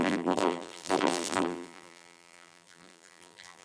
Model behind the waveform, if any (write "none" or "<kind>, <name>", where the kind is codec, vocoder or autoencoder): vocoder, BigVGAN v2